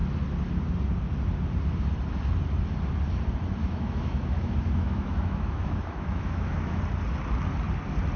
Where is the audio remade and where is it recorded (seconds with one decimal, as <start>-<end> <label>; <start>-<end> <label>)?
0.0-3.6 recorded; 3.6-6.8 remade; 6.8-8.2 recorded